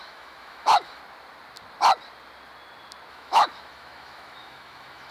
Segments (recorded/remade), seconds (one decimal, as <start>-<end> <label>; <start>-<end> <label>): 0.0-1.0 remade; 1.0-3.1 recorded; 3.1-5.1 remade